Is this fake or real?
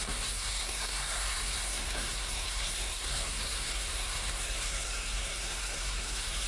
fake